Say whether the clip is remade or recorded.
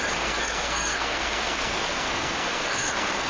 remade